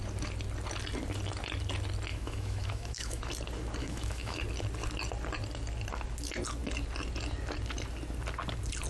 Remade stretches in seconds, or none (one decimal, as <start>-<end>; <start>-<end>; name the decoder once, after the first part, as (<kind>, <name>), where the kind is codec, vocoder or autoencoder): 2.1-3.3 (autoencoder, DAC-VAE); 3.8-4.4